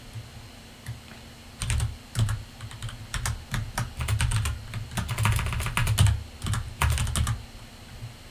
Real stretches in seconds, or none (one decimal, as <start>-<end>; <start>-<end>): 0.0-8.3